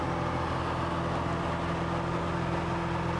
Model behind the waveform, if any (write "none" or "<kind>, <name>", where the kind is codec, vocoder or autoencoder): none